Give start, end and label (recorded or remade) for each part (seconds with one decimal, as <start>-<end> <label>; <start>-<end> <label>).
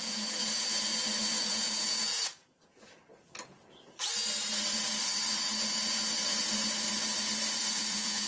0.0-0.4 remade; 0.4-1.5 recorded; 1.5-3.1 remade; 3.1-7.7 recorded; 7.7-8.3 remade